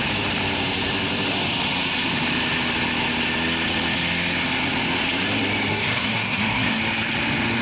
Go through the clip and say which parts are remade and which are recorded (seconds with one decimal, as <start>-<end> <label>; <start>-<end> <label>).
0.0-5.7 recorded; 5.7-6.8 remade; 6.8-7.6 recorded